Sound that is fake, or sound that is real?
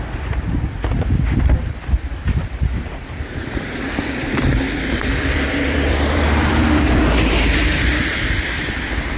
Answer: fake